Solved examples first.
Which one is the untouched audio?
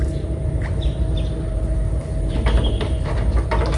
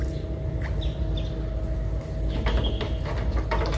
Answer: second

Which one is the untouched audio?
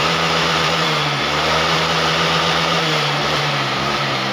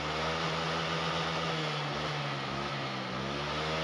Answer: second